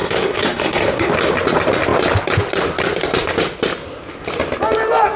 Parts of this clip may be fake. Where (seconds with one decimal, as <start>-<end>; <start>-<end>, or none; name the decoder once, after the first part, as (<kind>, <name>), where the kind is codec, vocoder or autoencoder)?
0.0-1.1 (codec, SNAC)